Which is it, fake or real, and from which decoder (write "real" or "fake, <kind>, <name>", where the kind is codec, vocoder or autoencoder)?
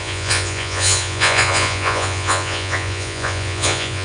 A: fake, vocoder, Vocos